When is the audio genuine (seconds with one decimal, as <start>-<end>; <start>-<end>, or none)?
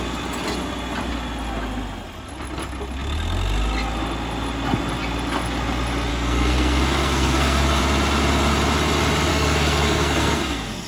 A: 0.0-6.1; 7.8-9.3